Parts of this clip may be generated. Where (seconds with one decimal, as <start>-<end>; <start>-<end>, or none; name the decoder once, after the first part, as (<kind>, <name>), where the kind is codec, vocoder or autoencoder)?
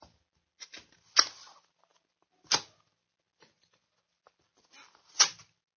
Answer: none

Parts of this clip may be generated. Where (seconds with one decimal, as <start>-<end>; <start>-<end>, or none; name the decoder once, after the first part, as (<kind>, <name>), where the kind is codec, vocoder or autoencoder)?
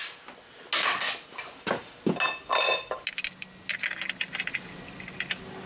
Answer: none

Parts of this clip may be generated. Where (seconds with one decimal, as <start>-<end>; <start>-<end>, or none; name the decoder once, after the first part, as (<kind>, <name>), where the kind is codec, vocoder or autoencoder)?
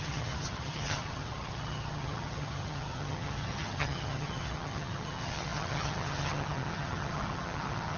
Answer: 0.0-8.0 (vocoder, HiFi-GAN)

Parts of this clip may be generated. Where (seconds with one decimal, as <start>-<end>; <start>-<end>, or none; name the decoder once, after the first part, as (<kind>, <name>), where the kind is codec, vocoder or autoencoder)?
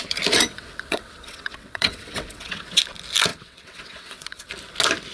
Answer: 0.5-2.8 (vocoder, WaveNeXt); 3.3-4.5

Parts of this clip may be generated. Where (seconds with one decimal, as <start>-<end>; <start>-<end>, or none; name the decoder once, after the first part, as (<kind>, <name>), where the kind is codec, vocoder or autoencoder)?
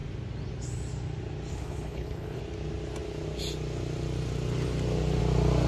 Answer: 1.5-2.4 (codec, HILCodec)